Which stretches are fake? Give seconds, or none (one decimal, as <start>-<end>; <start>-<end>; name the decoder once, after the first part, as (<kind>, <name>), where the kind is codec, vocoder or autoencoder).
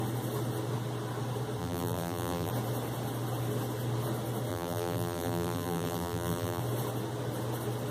1.6-2.5 (vocoder, BigVGAN v2); 4.5-6.6